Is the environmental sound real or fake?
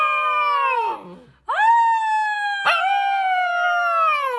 real